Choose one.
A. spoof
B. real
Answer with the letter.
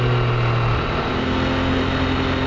B